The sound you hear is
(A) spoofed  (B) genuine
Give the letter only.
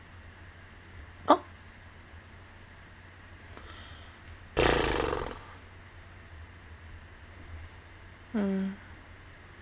B